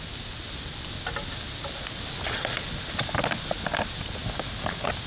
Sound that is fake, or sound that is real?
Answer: real